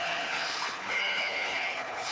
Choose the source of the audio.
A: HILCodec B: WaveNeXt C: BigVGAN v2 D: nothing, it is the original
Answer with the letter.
A